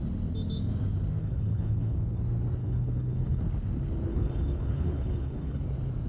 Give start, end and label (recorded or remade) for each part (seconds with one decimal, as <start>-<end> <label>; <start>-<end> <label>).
0.0-1.2 recorded; 1.2-2.2 remade; 2.2-2.6 recorded; 2.6-3.4 remade; 3.4-4.1 recorded; 4.1-5.6 remade; 5.6-6.1 recorded